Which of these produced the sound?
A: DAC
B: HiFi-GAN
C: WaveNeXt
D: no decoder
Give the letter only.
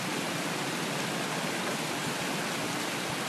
D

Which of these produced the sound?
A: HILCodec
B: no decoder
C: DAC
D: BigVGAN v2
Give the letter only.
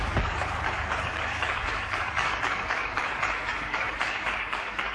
C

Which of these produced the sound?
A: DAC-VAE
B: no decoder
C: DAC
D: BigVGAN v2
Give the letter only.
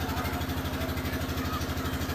B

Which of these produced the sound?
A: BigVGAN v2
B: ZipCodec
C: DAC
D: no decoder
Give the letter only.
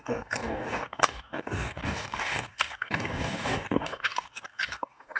C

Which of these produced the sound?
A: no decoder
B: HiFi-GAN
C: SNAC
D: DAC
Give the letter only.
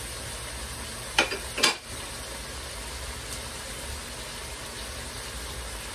A